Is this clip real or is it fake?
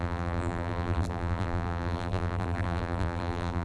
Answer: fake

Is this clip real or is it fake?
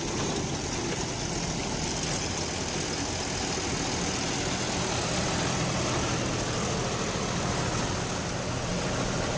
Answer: real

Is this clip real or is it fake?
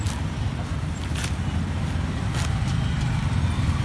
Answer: real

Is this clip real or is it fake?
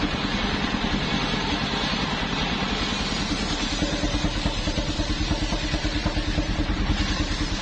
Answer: fake